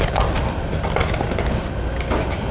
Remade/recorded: recorded